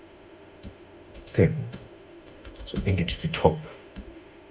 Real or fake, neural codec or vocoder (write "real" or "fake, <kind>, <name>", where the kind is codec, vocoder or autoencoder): fake, autoencoder, DAC-VAE